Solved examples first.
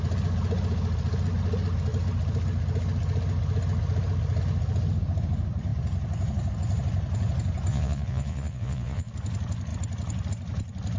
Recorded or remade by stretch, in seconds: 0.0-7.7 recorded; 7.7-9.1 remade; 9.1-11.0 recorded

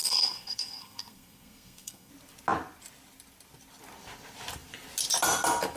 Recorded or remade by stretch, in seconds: 0.0-2.1 remade; 2.1-5.8 recorded

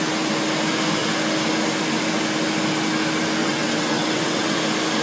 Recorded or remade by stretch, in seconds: 0.0-3.4 recorded; 3.4-4.6 remade; 4.6-5.0 recorded

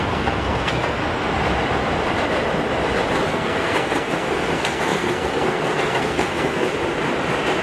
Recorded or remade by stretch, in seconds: 0.0-1.0 remade; 1.0-3.3 recorded; 3.3-6.7 remade; 6.7-7.6 recorded

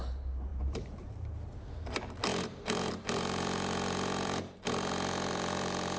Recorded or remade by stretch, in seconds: 0.0-0.5 recorded; 0.5-1.5 remade; 1.5-2.3 recorded; 2.3-6.0 remade